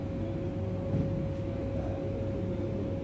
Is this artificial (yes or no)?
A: no